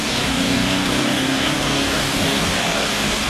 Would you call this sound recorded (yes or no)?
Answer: no